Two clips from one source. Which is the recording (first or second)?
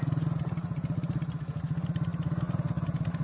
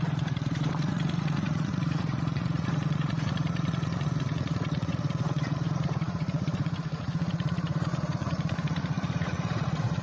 first